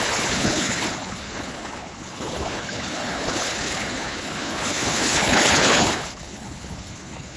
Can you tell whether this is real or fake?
fake